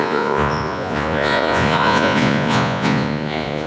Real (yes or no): no